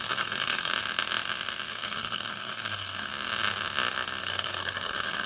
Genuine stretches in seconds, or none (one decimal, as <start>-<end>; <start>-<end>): 0.7-1.7; 3.1-4.2